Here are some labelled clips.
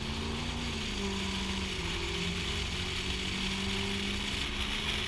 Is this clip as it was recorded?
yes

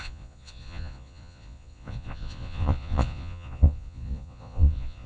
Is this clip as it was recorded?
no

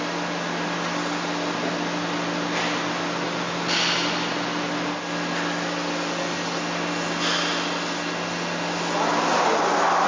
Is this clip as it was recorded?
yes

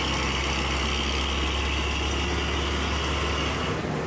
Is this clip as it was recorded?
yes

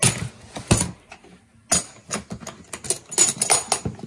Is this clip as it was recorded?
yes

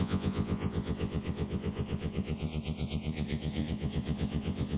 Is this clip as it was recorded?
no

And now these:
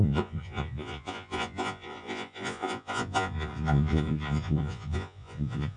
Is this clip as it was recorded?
no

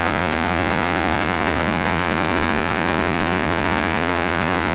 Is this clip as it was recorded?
no